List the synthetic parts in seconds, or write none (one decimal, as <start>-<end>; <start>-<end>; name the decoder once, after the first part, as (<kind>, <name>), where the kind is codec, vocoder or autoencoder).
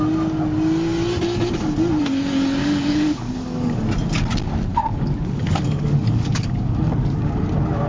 2.6-3.8 (codec, DAC); 4.7-7.4